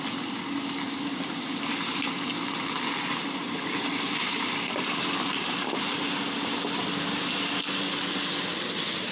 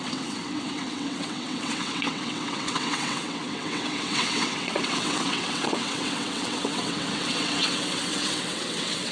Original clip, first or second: first